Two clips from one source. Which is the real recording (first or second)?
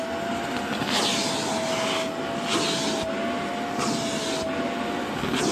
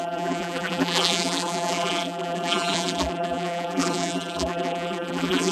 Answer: first